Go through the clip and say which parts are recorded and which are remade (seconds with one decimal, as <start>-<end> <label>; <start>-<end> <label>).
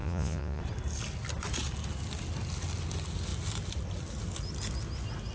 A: 0.0-0.6 remade; 0.6-5.3 recorded